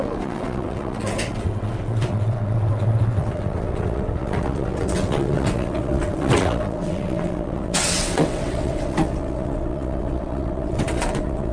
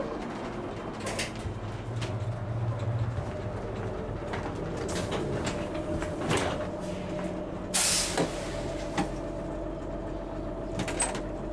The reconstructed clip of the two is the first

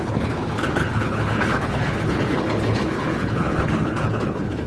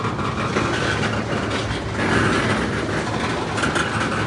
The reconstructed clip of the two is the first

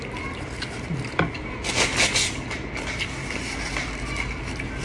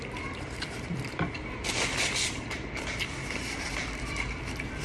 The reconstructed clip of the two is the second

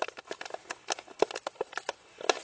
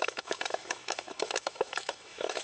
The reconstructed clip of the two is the second